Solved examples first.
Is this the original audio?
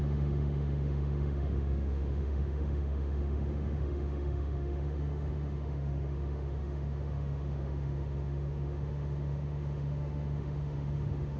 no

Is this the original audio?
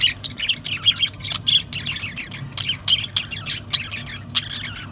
yes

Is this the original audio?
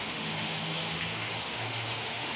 no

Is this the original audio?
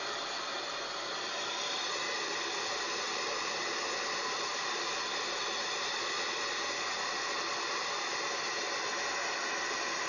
yes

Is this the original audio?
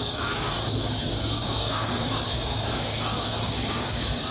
no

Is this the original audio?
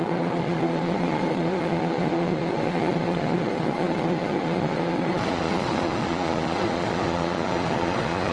no